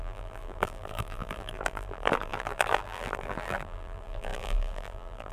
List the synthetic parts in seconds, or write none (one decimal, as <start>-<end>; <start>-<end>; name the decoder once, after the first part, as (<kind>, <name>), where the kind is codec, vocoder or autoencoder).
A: 0.0-5.3 (vocoder, BigVGAN v2)